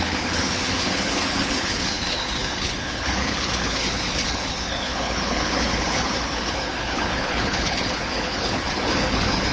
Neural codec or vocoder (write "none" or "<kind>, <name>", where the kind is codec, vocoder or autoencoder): codec, HILCodec